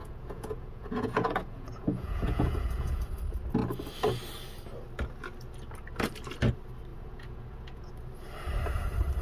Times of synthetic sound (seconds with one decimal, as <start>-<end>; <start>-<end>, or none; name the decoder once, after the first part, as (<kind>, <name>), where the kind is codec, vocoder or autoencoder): 0.0-3.0 (vocoder, Vocos); 6.9-7.9